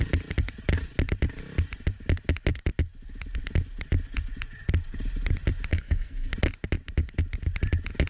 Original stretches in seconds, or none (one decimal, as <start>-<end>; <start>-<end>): 0.0-5.7; 6.3-8.1